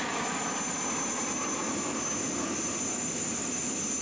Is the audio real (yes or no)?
yes